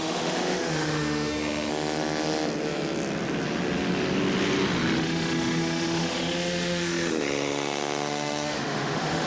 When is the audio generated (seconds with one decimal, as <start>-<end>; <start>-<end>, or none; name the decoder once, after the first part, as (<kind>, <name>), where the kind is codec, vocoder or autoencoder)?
0.0-1.7 (autoencoder, DAC-VAE); 5.0-9.3